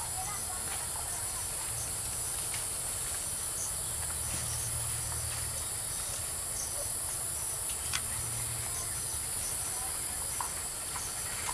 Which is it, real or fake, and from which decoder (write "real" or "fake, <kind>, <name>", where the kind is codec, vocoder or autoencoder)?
real